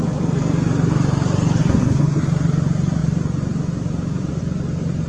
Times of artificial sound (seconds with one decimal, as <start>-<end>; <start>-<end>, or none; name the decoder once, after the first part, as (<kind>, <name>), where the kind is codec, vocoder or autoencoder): 1.6-2.2 (codec, SNAC)